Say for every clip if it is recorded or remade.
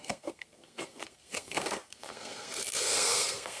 remade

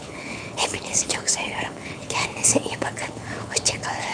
remade